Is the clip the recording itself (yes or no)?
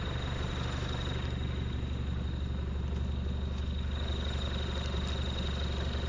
yes